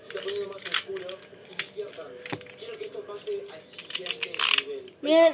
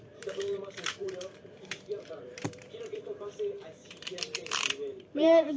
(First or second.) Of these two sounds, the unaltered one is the first